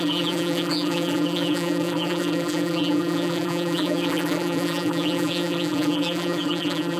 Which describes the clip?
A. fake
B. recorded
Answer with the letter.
A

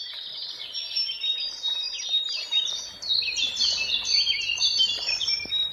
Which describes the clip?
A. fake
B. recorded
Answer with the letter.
A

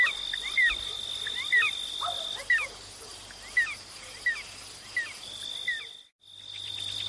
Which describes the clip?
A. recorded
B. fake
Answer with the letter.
A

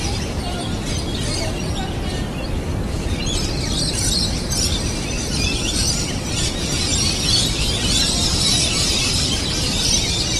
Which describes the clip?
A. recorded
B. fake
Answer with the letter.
B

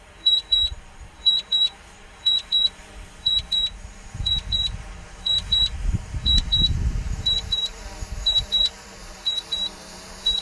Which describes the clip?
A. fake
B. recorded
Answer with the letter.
A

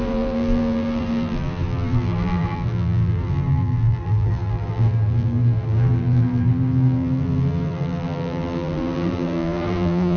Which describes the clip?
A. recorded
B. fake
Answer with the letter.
B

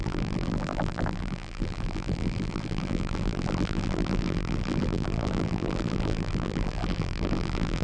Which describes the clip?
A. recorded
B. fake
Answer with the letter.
B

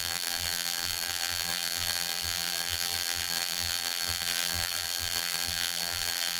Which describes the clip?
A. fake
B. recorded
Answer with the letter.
A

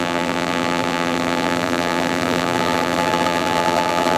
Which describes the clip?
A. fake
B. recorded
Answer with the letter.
A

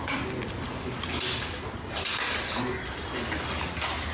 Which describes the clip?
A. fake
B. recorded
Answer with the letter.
B